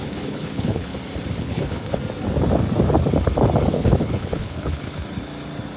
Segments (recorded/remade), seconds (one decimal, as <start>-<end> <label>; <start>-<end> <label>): 0.0-0.9 remade; 0.9-1.4 recorded; 1.4-2.0 remade; 2.0-3.7 recorded; 3.7-5.0 remade; 5.0-5.8 recorded